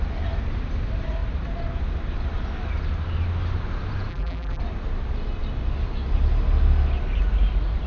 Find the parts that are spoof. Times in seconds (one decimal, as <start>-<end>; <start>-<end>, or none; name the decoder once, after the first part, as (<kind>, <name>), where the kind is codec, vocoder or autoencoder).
4.1-4.6 (vocoder, BigVGAN v2)